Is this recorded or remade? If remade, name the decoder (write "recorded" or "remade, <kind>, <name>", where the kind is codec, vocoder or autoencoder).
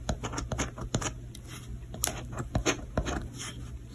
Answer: recorded